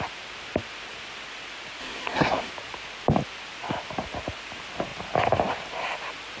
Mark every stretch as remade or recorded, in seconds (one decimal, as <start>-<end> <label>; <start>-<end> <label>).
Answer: 0.0-1.8 recorded; 1.8-2.5 remade; 2.5-6.4 recorded